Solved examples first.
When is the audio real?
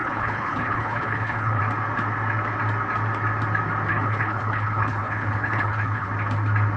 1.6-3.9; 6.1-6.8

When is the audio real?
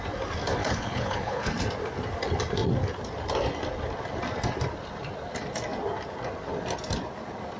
0.0-0.6; 1.5-7.6